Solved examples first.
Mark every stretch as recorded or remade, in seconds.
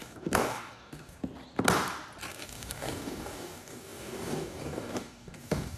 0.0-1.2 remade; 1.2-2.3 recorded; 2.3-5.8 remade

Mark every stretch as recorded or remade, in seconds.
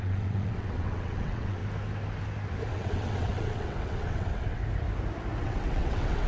0.0-1.6 remade; 1.6-2.7 recorded; 2.7-4.6 remade; 4.6-5.4 recorded; 5.4-6.3 remade